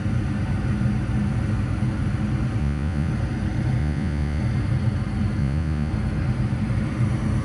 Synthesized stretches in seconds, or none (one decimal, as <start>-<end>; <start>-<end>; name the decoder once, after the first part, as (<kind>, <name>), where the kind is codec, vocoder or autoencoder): 2.6-3.1 (vocoder, Vocos); 3.8-4.4; 5.4-5.9